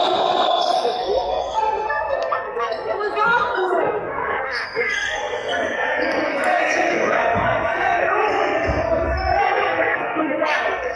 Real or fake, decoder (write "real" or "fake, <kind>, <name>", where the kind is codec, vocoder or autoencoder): fake, codec, SNAC